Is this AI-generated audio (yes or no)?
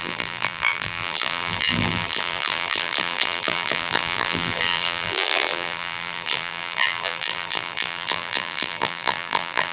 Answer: yes